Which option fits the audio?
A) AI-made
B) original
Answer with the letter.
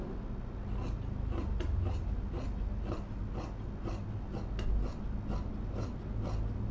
B